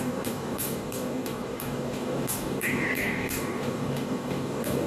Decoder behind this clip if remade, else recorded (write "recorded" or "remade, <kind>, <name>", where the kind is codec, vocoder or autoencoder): remade, codec, DAC